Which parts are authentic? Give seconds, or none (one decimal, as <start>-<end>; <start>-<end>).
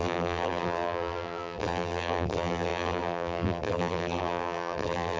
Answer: none